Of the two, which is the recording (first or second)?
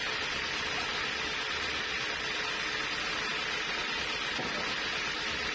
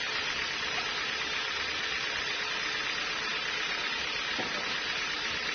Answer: first